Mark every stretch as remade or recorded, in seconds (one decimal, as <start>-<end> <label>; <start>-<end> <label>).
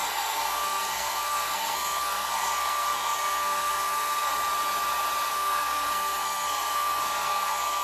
0.0-4.3 remade; 4.3-5.3 recorded; 5.3-7.8 remade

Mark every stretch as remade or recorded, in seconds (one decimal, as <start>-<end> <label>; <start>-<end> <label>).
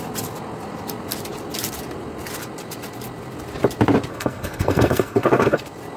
0.0-4.1 recorded; 4.1-5.6 remade; 5.6-6.0 recorded